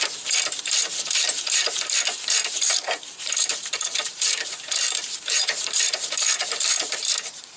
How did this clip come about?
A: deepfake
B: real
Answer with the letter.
A